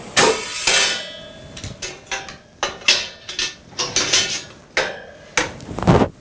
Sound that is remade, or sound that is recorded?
recorded